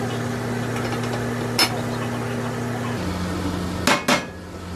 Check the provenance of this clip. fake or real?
real